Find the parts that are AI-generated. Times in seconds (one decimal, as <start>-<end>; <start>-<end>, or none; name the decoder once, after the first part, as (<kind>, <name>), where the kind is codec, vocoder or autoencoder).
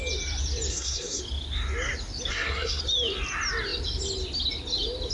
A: 0.7-1.2 (codec, SNAC); 2.3-2.8